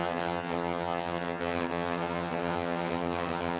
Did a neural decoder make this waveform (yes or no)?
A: yes